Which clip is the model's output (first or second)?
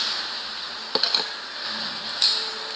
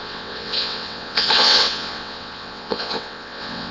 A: second